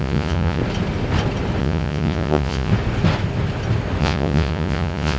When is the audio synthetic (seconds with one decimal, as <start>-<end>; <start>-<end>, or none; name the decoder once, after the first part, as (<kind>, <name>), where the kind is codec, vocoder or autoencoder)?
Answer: 0.0-0.6 (vocoder, Vocos); 1.6-2.7; 4.0-5.2